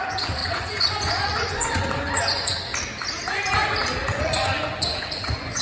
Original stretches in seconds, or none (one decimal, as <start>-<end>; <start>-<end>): 2.7-4.1